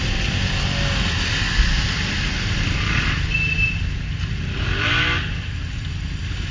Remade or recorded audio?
recorded